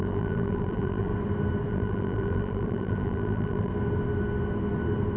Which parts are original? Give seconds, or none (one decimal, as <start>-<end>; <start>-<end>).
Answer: 1.1-1.7; 3.7-5.2